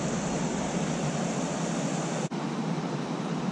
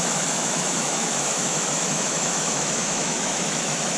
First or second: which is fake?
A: second